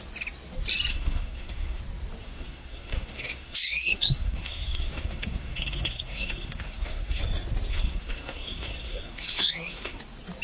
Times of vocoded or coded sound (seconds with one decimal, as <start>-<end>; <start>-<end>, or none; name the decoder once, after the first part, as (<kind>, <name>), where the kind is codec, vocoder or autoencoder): 0.9-1.8 (codec, SNAC); 2.2-7.2; 7.7-10.0